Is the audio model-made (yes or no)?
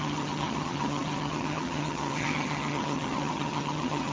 yes